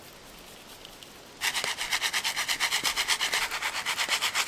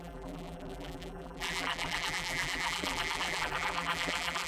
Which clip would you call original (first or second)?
first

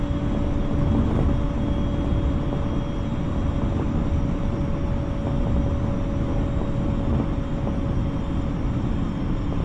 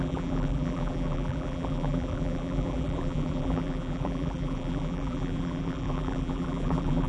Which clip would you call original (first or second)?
first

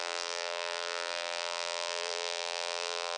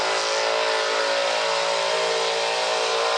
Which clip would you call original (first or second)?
second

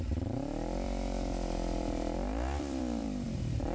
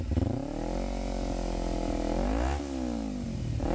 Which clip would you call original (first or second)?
second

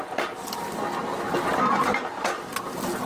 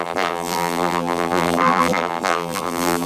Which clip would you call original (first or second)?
first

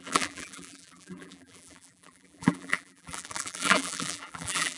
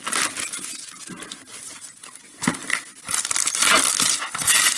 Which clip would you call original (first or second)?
second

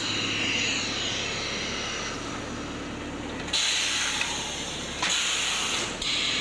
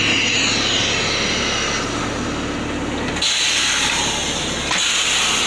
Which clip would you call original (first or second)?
second